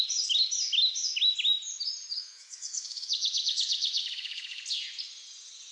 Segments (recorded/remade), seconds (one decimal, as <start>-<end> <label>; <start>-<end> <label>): 0.0-2.1 recorded; 2.1-4.6 remade; 4.6-5.7 recorded